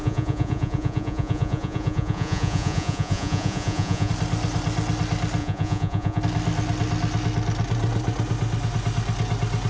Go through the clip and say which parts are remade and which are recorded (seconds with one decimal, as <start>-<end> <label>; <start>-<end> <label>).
0.0-4.1 remade; 4.1-5.4 recorded; 5.4-6.2 remade; 6.2-9.7 recorded